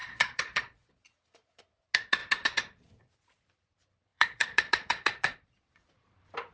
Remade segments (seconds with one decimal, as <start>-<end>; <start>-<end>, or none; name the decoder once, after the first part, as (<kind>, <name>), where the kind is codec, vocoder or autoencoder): 0.0-1.6 (vocoder, Vocos); 4.1-5.9